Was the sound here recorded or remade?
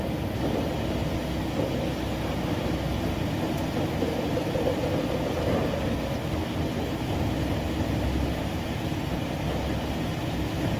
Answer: recorded